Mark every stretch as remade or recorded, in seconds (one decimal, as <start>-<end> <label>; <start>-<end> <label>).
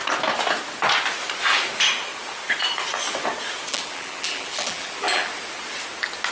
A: 0.0-3.7 recorded; 3.7-5.3 remade; 5.3-6.3 recorded